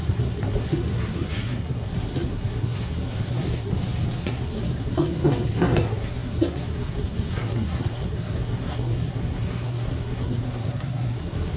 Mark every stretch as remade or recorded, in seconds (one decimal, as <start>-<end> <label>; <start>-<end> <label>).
0.0-3.7 remade; 3.7-4.2 recorded; 4.2-11.6 remade